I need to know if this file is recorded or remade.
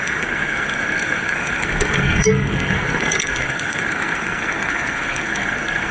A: remade